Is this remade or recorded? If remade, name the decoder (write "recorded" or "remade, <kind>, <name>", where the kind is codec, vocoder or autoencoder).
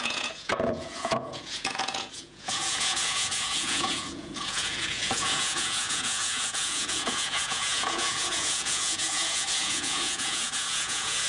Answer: remade, vocoder, Vocos